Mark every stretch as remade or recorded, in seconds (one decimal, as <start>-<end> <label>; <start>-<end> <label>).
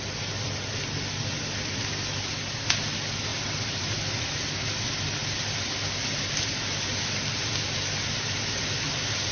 0.0-3.3 recorded; 3.3-4.2 remade; 4.2-9.3 recorded